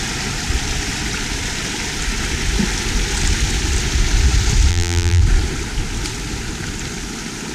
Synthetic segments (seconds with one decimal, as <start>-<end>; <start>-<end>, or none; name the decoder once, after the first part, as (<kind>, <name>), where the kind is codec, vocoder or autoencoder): 4.7-5.2 (vocoder, BigVGAN v2)